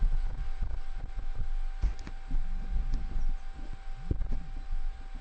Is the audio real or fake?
real